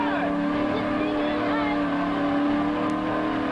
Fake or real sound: real